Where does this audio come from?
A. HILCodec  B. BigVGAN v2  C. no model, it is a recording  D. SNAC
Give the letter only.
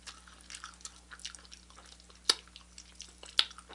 C